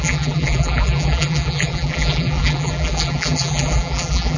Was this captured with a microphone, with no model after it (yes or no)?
no